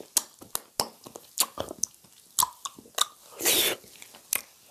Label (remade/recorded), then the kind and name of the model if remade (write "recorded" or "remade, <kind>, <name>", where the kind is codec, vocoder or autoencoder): recorded